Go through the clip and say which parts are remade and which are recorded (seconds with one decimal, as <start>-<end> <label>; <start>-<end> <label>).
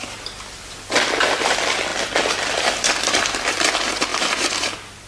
0.0-5.1 recorded